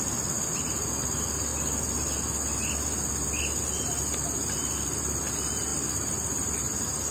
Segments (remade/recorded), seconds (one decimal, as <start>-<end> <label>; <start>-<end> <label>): 0.0-7.1 recorded